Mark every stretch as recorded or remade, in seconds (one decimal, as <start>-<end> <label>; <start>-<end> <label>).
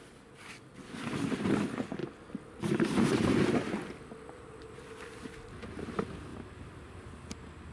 0.0-7.7 recorded